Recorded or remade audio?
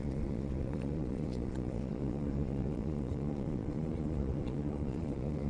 remade